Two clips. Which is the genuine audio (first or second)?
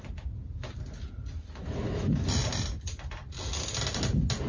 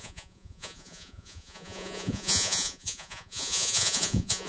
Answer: first